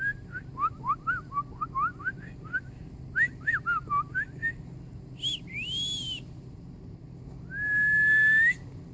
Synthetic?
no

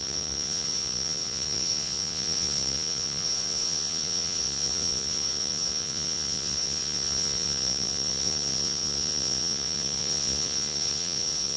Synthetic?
yes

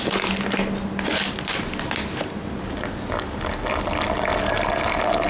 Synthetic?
no